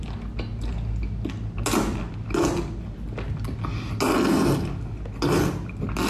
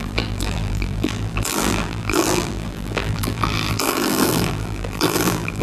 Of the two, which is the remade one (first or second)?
second